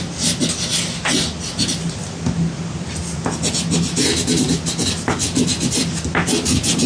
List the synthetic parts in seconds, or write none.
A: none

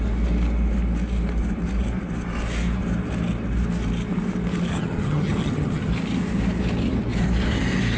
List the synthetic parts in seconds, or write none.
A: 4.7-5.9 (vocoder, HiFi-GAN)

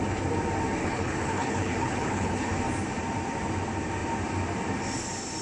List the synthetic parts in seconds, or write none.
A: 0.8-2.5 (codec, HILCodec)

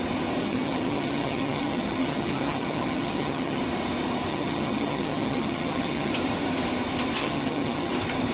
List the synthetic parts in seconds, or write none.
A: 0.4-3.6 (vocoder, HiFi-GAN); 4.3-6.1; 7.2-7.9

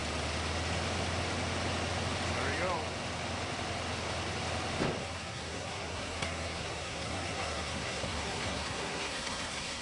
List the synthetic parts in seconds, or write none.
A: 5.0-9.8 (codec, SNAC)

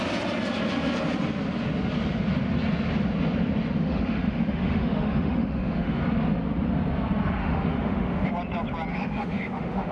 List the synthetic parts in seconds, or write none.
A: 3.8-6.0 (autoencoder, DAC-VAE); 7.4-8.3; 8.9-9.9